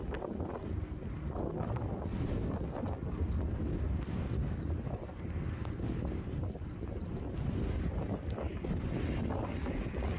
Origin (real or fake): real